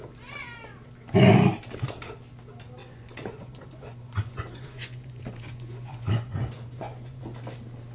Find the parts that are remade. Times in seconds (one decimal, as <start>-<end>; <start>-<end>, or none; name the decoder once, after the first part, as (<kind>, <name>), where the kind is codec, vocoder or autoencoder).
2.8-7.2 (vocoder, Vocos)